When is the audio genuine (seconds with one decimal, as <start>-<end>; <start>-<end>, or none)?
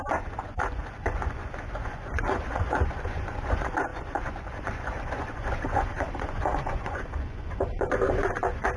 none